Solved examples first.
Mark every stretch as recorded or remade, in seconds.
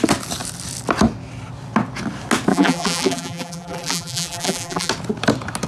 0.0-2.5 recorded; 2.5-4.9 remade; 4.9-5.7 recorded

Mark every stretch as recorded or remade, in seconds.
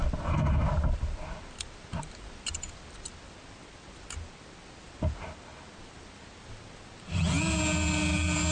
0.0-8.5 recorded